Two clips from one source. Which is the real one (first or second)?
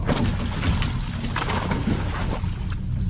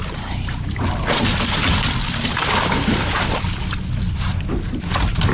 first